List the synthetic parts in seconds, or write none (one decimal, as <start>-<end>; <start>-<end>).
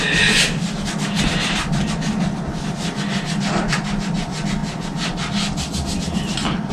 none